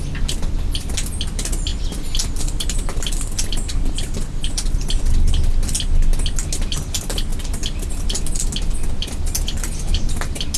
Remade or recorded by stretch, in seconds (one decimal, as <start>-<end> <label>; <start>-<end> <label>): 0.0-1.7 recorded; 1.7-5.3 remade; 5.3-7.3 recorded; 7.3-7.9 remade; 7.9-10.6 recorded